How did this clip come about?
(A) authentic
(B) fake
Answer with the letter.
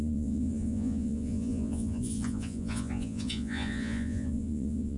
B